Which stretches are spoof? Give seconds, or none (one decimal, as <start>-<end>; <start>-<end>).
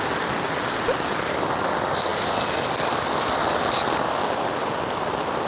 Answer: none